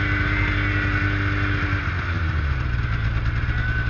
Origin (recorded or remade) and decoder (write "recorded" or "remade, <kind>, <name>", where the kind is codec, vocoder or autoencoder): recorded